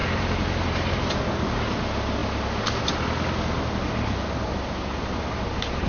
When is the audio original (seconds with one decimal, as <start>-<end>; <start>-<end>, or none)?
1.2-5.9